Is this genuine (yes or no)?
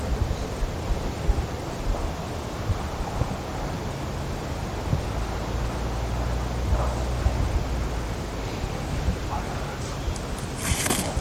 yes